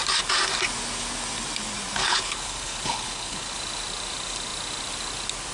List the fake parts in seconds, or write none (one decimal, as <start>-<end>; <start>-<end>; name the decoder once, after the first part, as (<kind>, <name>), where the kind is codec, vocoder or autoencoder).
2.0-3.6 (codec, HILCodec)